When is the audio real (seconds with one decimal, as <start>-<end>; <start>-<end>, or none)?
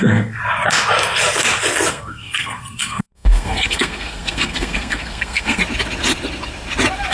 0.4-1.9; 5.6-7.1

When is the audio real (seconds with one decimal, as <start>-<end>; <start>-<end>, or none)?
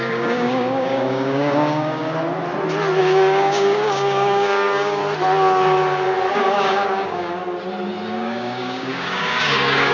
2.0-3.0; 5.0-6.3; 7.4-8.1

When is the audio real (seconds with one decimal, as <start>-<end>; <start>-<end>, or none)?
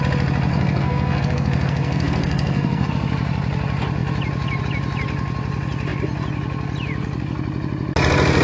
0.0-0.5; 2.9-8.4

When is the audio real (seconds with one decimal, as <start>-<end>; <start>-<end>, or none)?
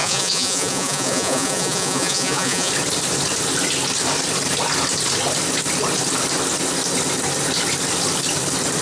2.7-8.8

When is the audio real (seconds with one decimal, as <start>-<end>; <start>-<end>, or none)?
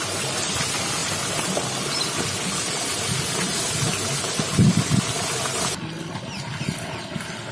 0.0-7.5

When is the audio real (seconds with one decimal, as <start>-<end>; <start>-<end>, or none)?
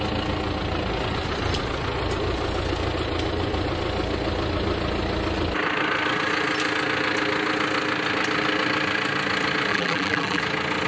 0.0-9.7; 10.4-10.9